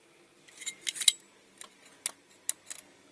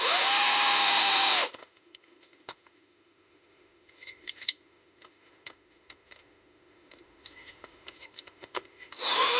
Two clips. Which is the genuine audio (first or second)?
first